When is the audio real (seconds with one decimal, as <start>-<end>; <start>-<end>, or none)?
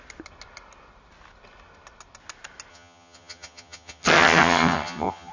0.0-2.7